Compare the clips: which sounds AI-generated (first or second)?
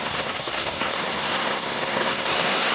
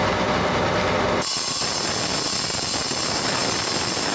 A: first